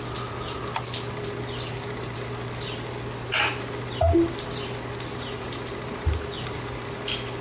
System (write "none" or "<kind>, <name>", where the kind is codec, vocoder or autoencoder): none